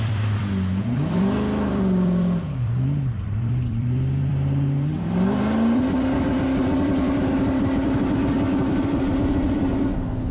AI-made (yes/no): yes